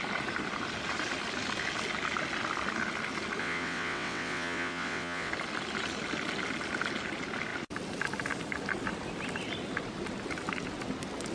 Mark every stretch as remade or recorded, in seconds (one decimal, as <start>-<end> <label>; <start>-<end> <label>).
0.0-3.4 recorded; 3.4-5.3 remade; 5.3-11.3 recorded